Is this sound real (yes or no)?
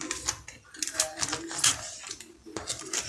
yes